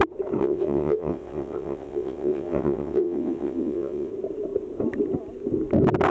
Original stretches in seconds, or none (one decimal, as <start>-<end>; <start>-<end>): 0.0-0.4; 4.1-6.1